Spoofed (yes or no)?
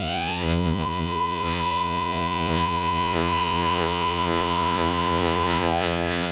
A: yes